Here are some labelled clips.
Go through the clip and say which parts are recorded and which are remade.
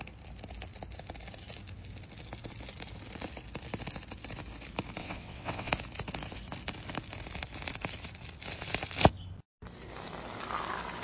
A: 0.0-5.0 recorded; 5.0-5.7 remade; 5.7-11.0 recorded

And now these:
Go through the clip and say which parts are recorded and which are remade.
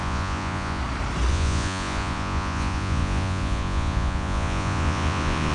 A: 0.0-0.8 remade; 0.8-1.3 recorded; 1.3-5.5 remade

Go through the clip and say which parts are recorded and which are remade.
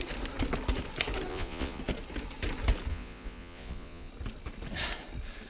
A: 0.0-1.3 recorded; 1.3-1.8 remade; 1.8-2.9 recorded; 2.9-4.1 remade; 4.1-5.5 recorded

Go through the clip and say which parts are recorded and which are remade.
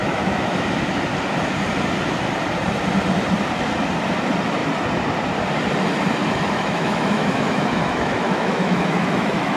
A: 0.0-0.7 remade; 0.7-6.2 recorded; 6.2-9.6 remade